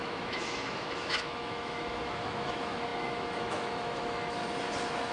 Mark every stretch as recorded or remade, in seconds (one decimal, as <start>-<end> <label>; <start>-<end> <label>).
0.0-4.4 remade; 4.4-5.1 recorded